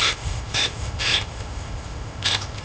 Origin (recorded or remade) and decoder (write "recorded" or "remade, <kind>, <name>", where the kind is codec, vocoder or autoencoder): remade, codec, ZipCodec